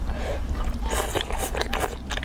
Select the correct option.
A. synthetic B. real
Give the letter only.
B